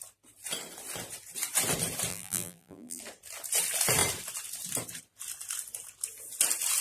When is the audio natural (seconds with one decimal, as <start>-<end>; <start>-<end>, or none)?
0.0-2.1; 3.0-6.8